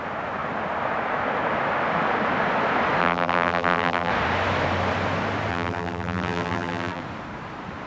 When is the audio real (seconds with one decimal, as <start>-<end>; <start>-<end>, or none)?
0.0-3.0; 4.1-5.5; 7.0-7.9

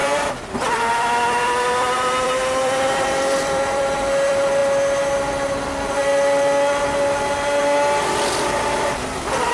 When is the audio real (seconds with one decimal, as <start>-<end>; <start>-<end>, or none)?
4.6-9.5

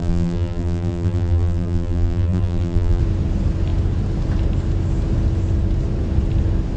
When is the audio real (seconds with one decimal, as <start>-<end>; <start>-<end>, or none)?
3.0-6.8

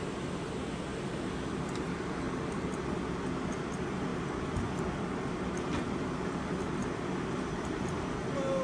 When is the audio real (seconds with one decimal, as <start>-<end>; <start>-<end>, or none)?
0.0-6.8; 8.2-8.6

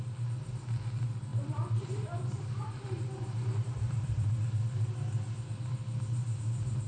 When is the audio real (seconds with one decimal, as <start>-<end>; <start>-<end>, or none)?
0.0-1.3; 4.4-6.9

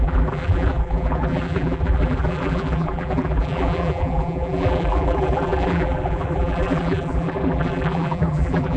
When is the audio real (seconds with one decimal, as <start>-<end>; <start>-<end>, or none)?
none

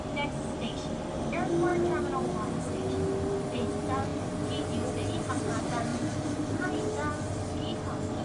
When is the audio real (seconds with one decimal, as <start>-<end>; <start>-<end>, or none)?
0.0-5.9; 6.7-8.2

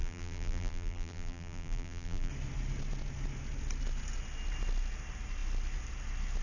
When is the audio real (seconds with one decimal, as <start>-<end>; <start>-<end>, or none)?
2.3-6.4